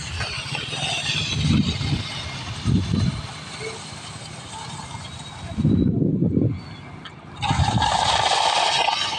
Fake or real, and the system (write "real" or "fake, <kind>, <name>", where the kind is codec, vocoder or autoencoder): real